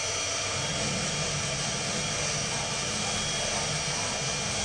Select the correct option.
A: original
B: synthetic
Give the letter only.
A